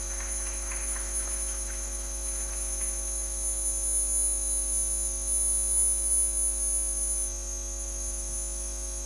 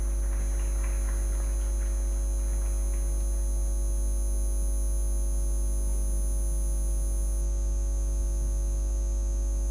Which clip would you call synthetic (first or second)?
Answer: first